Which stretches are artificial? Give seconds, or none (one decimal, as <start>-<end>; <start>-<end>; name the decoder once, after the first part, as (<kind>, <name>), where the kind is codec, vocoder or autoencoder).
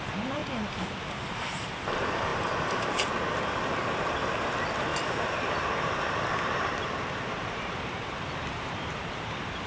0.0-0.4 (vocoder, BigVGAN v2); 1.3-9.7